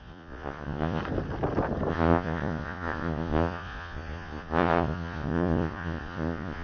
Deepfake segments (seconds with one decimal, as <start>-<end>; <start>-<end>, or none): 0.0-1.0; 1.9-6.6